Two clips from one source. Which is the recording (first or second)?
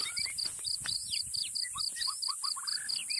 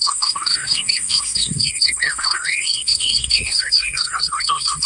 first